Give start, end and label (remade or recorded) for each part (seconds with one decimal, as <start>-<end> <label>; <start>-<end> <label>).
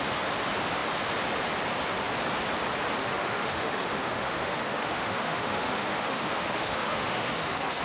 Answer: 0.0-3.0 recorded; 3.0-7.8 remade